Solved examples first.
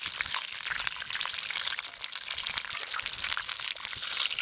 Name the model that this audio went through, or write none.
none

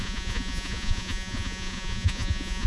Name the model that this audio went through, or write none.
vocoder, Vocos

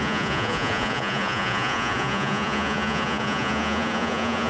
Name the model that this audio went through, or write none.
vocoder, Vocos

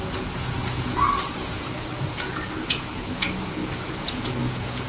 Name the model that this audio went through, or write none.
vocoder, Vocos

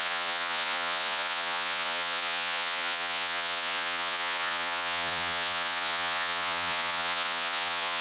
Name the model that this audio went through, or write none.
vocoder, Vocos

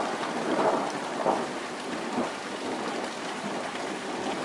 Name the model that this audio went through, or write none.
none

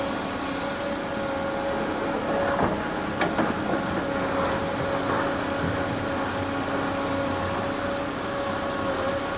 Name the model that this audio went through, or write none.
none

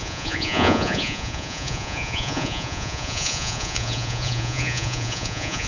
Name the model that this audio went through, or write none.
vocoder, Vocos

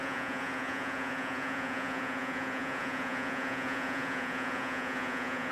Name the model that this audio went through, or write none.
vocoder, Vocos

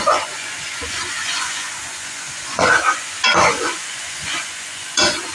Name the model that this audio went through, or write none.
vocoder, Vocos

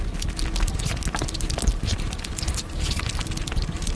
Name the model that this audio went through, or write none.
none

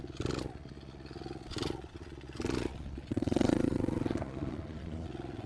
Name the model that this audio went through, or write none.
vocoder, Vocos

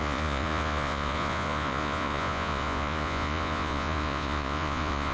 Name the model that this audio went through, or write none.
vocoder, Vocos